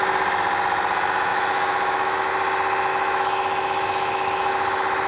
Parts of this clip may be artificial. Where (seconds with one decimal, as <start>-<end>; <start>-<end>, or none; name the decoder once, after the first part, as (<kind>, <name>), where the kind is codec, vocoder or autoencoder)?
1.3-2.3 (autoencoder, DAC-VAE); 2.9-4.5